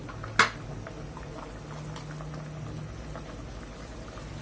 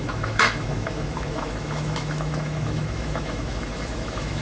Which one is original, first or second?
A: first